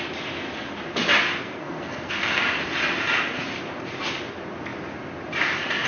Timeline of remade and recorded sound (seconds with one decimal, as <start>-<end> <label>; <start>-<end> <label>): 0.0-1.4 recorded; 1.4-2.4 remade; 2.4-5.9 recorded